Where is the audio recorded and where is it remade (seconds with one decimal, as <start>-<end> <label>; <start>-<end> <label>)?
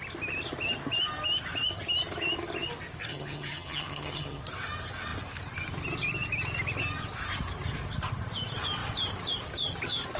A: 0.0-3.1 recorded; 3.1-4.4 remade; 4.4-10.2 recorded